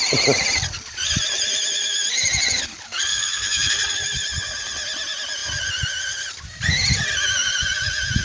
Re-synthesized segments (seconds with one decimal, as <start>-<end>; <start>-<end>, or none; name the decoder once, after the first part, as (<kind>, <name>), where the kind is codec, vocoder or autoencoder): 3.1-3.7 (autoencoder, DAC-VAE)